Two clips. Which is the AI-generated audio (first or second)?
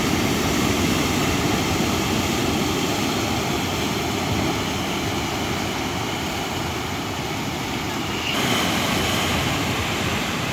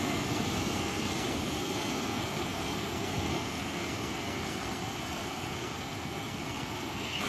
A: second